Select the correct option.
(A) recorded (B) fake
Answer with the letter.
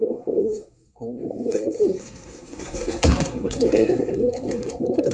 B